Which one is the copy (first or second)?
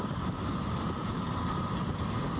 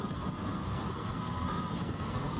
second